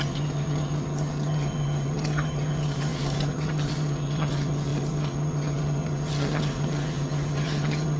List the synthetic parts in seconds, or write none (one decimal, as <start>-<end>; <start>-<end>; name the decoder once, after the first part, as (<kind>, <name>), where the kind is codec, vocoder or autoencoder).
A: 0.0-8.0 (vocoder, HiFi-GAN)